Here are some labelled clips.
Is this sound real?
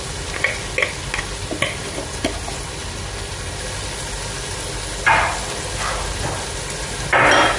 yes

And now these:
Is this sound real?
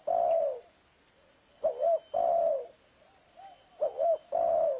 yes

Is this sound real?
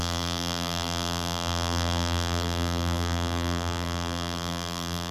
no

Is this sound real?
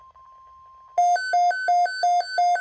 yes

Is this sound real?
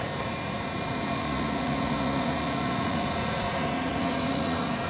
no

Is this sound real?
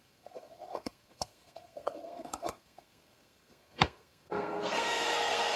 no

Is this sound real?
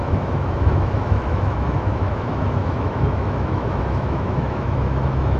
no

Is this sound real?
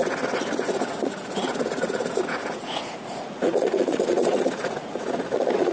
no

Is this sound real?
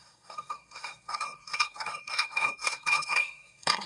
no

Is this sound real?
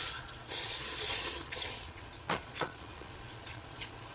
no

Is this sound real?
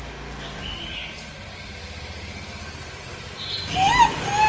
yes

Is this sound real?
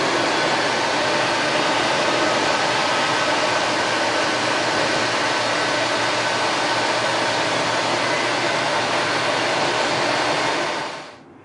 yes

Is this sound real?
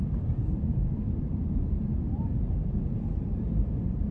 no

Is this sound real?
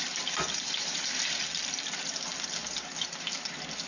no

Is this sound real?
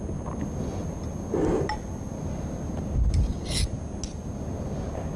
yes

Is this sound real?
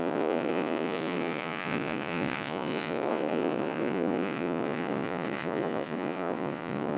no